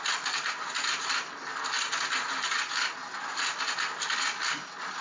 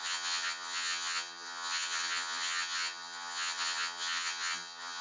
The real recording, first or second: first